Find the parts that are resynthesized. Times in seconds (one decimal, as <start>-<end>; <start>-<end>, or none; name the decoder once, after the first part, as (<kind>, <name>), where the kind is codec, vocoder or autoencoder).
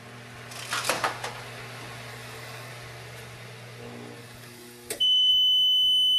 2.1-2.7 (codec, DAC); 4.2-5.3